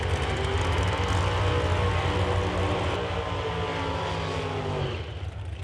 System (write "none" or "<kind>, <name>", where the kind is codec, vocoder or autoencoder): none